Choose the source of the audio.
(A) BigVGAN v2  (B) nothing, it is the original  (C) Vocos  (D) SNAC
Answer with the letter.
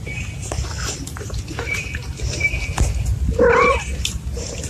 B